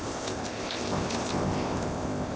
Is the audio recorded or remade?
remade